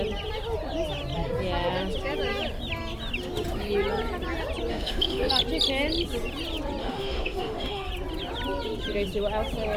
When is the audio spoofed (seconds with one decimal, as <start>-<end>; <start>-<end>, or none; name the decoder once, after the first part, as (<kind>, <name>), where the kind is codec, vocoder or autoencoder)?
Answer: 4.7-5.3 (autoencoder, DAC-VAE); 6.8-7.9